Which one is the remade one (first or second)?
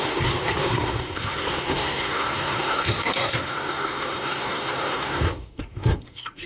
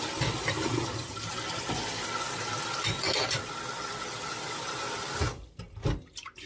first